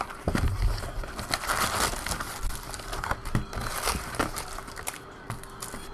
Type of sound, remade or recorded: recorded